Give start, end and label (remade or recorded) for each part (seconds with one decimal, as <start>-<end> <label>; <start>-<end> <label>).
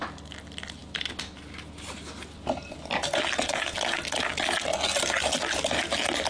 0.0-6.3 recorded